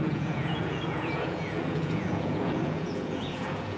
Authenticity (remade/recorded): remade